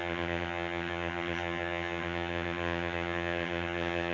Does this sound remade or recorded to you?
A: remade